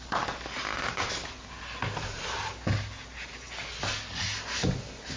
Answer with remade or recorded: recorded